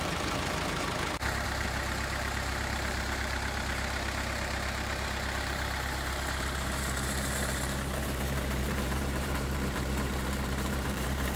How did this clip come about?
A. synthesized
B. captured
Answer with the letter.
A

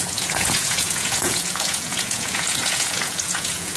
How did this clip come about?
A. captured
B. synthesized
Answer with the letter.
B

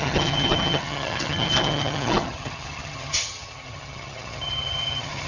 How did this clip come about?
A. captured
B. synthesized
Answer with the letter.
B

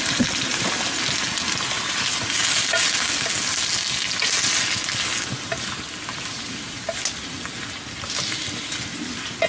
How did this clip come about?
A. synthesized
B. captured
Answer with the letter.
B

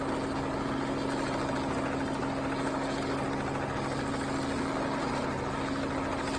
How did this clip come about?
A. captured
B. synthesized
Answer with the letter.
A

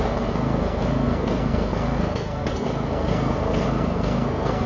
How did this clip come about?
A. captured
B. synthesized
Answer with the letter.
B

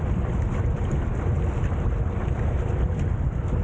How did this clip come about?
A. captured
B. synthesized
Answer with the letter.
A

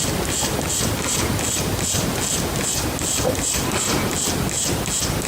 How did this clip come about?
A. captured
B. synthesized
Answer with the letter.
A